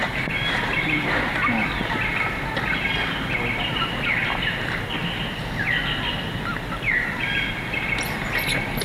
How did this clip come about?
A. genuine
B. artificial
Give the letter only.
B